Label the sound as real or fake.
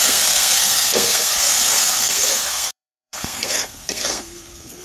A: fake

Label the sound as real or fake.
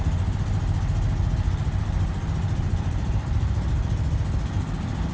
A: real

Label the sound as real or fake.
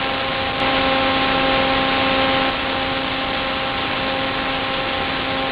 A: real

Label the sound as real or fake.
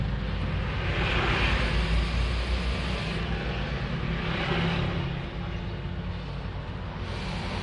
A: real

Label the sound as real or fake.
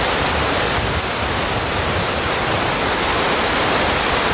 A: real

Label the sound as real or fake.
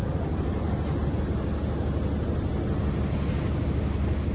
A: real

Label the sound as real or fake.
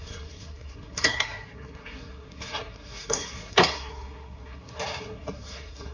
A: fake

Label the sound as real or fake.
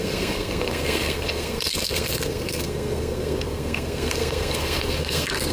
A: fake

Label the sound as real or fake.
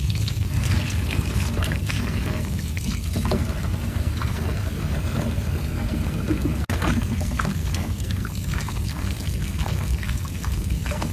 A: fake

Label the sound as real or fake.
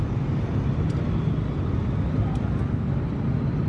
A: real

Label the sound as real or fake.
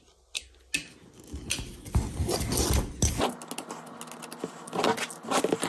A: real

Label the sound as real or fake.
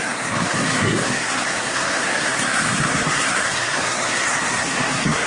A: fake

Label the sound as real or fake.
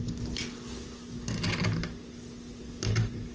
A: real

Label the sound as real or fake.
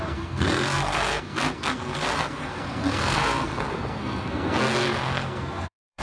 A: fake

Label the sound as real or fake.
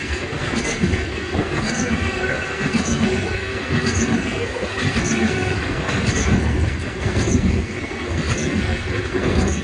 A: fake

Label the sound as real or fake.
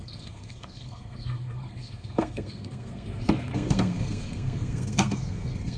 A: fake